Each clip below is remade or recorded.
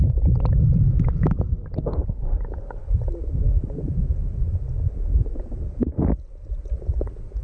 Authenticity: recorded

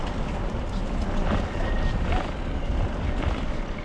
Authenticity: recorded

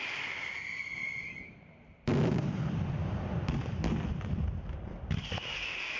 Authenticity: recorded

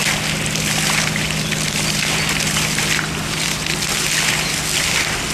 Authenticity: recorded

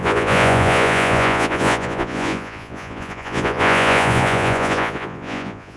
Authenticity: remade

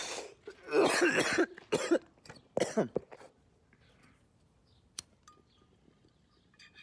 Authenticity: recorded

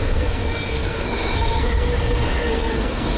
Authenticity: remade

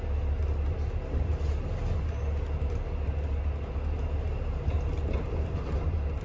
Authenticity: recorded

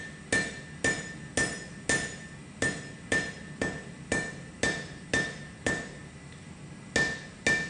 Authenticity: recorded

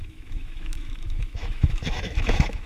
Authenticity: remade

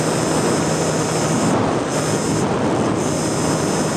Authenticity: recorded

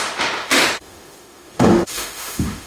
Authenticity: remade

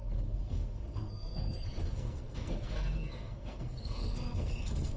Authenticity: remade